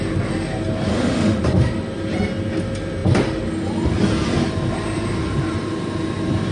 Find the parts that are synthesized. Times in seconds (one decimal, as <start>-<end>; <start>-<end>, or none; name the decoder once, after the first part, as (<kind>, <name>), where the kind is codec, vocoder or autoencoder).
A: 0.9-1.4 (autoencoder, DAC-VAE)